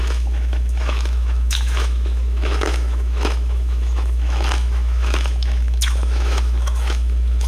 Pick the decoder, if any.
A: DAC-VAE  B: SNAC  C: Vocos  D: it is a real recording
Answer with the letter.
A